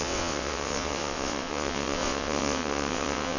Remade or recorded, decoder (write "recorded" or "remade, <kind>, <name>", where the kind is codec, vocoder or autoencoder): remade, vocoder, WaveNeXt